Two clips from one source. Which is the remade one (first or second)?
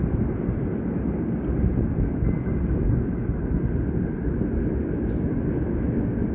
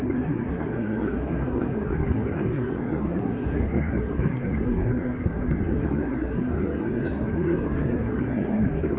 second